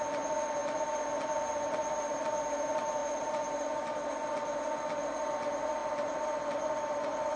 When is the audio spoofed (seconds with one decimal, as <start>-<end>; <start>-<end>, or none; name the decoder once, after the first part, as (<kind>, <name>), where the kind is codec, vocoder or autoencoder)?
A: 3.0-4.0 (vocoder, BigVGAN v2); 5.8-7.4